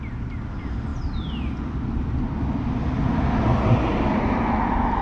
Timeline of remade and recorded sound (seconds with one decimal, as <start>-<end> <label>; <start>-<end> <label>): 0.0-5.0 recorded